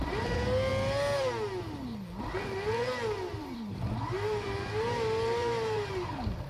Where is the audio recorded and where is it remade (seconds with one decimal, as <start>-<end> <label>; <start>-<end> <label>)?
0.0-3.4 recorded; 3.4-6.5 remade